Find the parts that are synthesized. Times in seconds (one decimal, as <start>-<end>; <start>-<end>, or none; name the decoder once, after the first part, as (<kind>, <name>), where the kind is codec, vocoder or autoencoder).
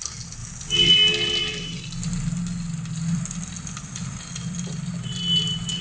none